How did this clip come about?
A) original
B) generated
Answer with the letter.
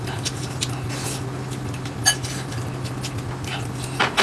A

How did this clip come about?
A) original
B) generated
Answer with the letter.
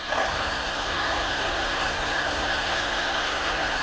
B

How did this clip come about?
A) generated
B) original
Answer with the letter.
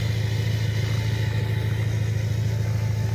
B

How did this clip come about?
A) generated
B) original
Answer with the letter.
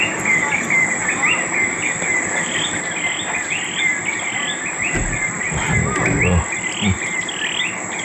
B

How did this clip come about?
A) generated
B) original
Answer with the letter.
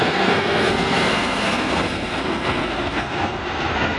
A